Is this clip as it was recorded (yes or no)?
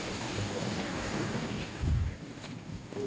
no